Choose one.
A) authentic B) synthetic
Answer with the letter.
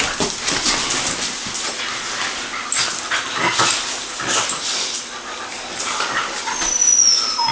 A